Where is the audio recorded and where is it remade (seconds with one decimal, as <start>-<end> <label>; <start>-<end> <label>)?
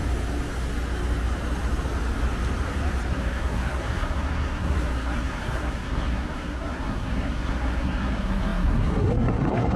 0.0-3.1 recorded; 3.1-9.8 remade